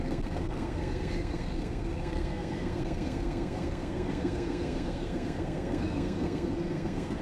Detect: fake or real fake